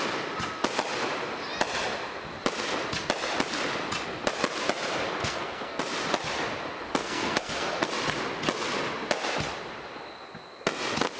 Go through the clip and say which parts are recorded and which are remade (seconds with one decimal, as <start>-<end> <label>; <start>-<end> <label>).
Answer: 0.0-5.2 recorded; 5.2-5.8 remade; 5.8-7.0 recorded; 7.0-7.9 remade; 7.9-11.2 recorded